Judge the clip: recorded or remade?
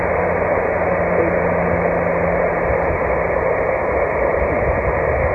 recorded